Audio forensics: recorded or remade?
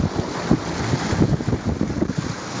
recorded